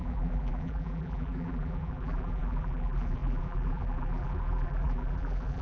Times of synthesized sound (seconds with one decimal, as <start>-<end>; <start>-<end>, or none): 0.0-5.6